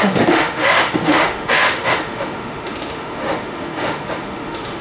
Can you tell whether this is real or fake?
fake